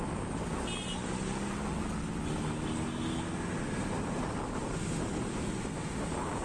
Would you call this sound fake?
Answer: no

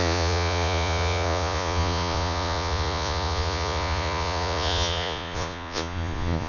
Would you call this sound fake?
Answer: yes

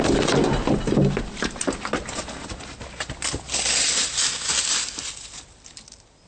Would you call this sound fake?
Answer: no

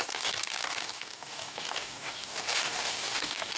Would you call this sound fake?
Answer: yes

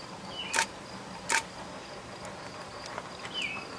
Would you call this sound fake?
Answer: no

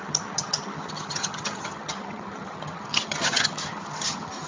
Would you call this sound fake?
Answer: yes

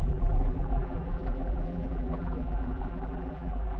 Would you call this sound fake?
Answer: yes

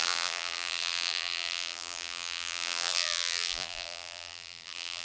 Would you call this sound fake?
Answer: yes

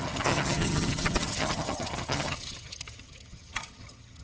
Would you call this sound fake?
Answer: yes